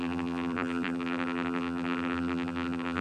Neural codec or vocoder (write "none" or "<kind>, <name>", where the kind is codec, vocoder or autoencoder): vocoder, BigVGAN v2